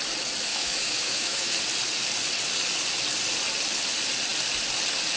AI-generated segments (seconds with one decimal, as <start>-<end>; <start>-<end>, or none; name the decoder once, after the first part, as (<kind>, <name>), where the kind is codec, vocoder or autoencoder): 0.5-1.6 (autoencoder, DAC-VAE)